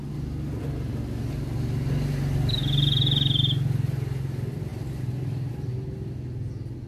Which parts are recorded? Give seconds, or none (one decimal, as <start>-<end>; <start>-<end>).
0.0-6.9